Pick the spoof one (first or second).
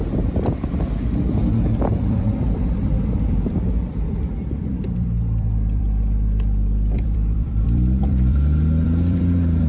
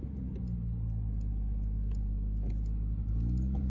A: first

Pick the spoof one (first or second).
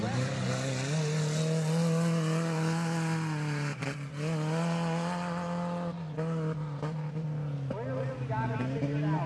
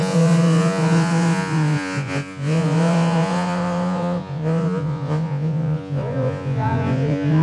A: second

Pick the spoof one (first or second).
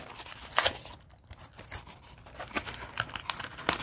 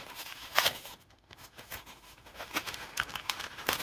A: second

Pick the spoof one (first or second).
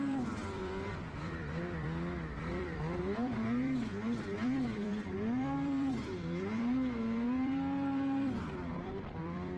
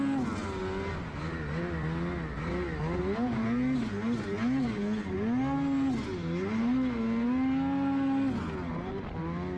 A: first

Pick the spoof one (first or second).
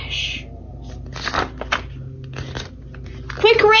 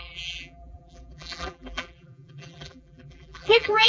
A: second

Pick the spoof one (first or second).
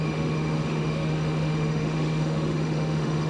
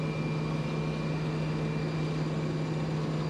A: first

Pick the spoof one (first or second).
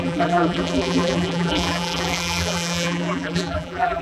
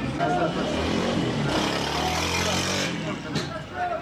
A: first